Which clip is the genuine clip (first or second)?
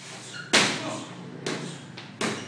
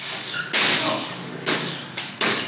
first